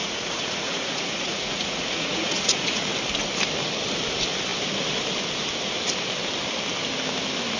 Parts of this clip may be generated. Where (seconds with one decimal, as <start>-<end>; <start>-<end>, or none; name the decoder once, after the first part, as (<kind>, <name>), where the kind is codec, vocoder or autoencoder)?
0.0-2.9 (vocoder, Vocos)